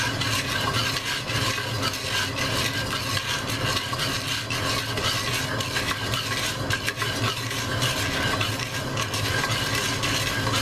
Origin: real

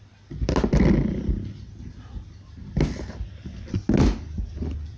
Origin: real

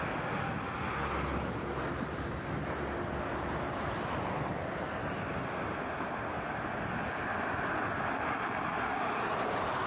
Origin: real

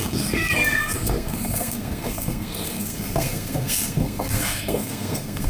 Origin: fake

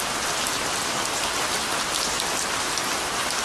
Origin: real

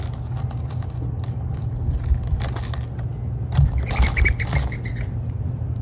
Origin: real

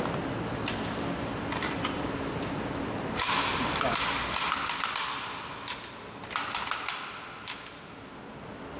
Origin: real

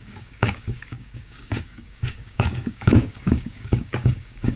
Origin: fake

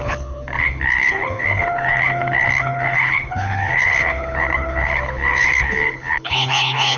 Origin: fake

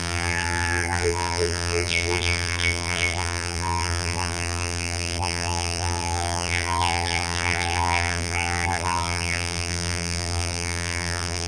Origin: fake